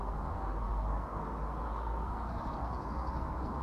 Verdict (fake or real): fake